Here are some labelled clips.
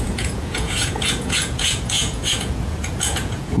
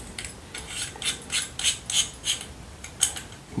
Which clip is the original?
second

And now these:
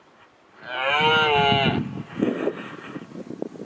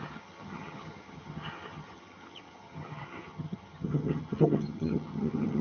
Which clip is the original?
first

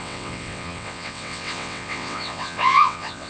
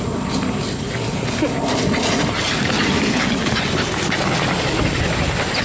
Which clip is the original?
second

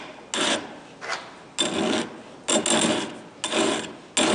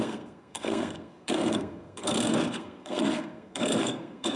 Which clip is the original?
first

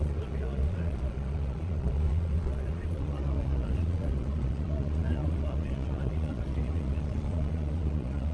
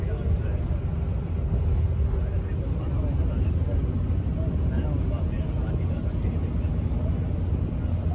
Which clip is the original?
second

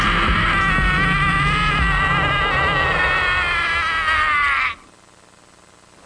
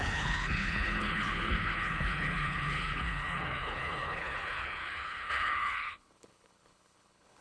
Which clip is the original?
first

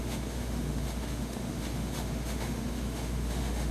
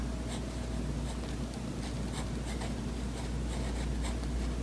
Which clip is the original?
second